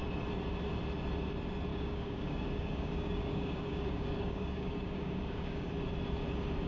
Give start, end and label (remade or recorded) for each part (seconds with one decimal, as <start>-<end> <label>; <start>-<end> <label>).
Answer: 0.0-1.7 recorded; 1.7-5.7 remade; 5.7-6.7 recorded